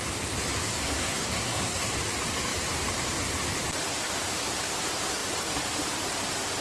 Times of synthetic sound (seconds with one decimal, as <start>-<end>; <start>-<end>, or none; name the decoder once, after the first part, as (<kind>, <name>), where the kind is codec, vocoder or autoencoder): 0.7-1.9 (codec, SNAC)